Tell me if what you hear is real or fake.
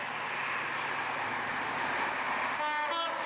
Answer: real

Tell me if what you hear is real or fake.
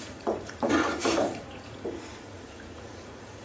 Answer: fake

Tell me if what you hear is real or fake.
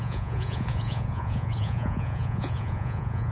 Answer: fake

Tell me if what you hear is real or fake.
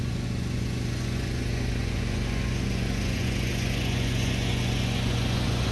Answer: fake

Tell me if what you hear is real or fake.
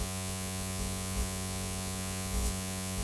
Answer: fake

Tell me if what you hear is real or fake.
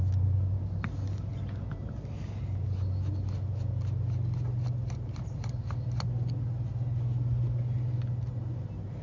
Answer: real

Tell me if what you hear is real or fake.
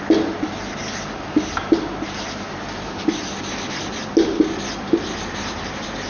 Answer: real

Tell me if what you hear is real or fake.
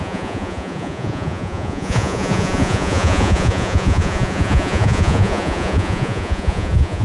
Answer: fake